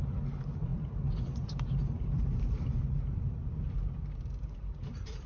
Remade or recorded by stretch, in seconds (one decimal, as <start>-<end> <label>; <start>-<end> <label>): 0.0-5.3 remade